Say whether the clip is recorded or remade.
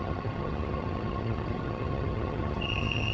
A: remade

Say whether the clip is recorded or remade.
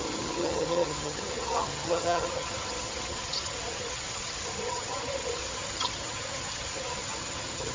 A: remade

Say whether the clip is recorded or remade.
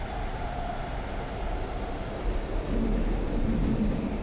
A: recorded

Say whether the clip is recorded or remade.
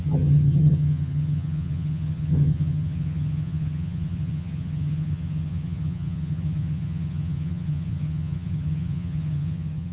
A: remade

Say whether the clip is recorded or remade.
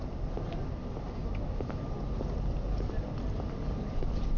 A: recorded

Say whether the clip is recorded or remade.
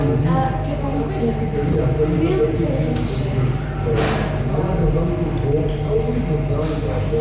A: recorded